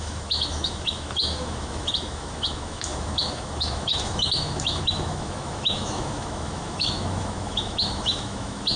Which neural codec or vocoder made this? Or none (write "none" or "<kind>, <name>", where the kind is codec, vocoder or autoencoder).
autoencoder, DAC-VAE